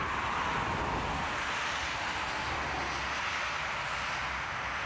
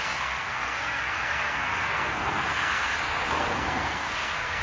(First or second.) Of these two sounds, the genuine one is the first